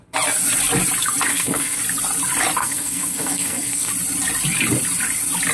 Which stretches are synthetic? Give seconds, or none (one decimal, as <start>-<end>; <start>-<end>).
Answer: 1.3-1.8; 2.6-3.9